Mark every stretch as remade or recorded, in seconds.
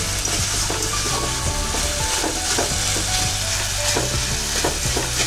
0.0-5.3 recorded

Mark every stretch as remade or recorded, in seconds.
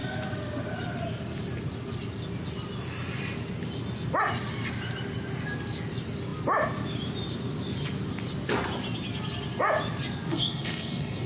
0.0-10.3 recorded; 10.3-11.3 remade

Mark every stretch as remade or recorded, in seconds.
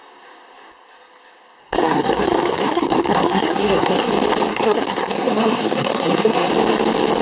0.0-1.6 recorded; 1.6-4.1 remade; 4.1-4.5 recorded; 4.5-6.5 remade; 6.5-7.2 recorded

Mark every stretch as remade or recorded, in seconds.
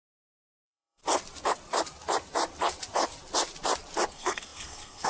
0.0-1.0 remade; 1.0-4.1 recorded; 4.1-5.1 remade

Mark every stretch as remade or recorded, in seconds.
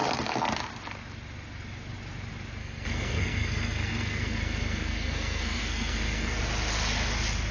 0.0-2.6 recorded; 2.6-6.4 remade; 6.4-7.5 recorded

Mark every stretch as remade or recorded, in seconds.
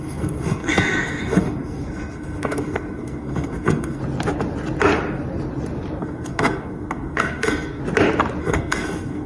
0.0-4.0 remade; 4.0-6.0 recorded; 6.0-7.8 remade; 7.8-8.4 recorded; 8.4-9.3 remade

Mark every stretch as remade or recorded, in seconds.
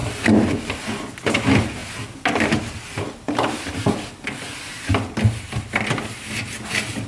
0.0-7.1 recorded